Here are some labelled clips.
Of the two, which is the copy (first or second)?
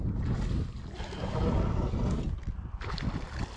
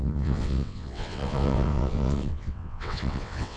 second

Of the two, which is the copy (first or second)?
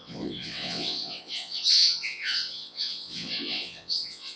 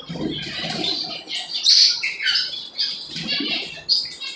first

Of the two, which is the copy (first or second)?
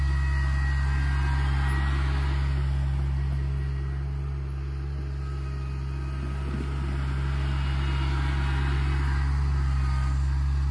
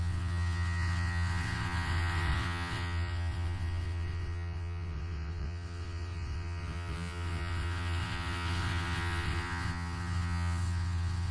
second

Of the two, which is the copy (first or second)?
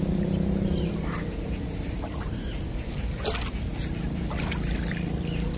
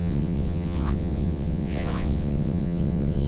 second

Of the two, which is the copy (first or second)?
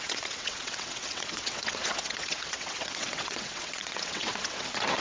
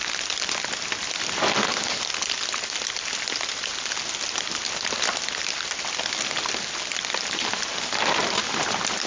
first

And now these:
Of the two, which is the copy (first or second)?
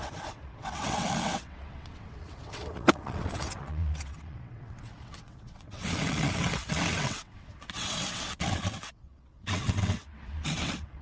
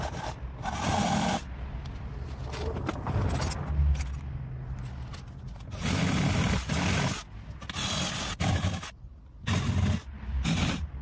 first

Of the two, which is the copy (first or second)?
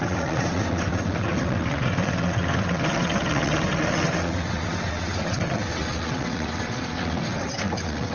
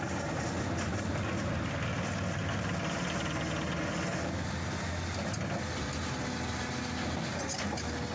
first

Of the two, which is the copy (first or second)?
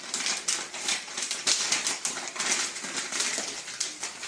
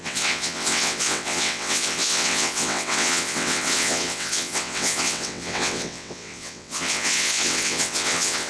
second